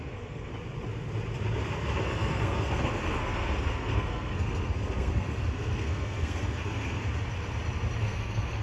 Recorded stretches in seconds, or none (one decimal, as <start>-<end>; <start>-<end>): 0.5-2.0; 7.0-8.0